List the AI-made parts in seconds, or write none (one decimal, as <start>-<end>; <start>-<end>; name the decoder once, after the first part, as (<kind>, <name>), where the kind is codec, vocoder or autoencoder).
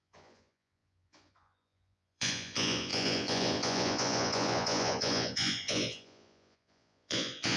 0.0-7.6 (vocoder, Vocos)